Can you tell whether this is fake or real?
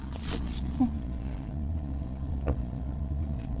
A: fake